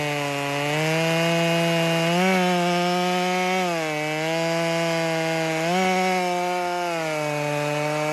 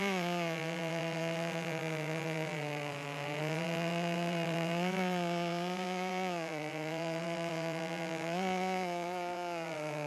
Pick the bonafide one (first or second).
first